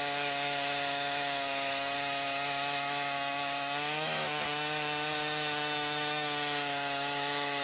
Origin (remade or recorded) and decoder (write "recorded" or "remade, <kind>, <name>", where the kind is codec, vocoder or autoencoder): remade, autoencoder, DAC-VAE